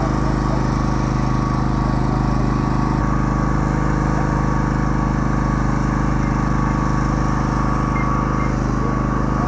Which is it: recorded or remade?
recorded